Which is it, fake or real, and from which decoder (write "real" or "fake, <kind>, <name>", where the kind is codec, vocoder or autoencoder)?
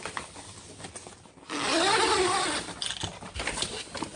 real